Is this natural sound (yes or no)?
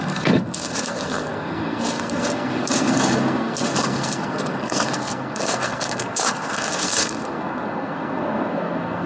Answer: no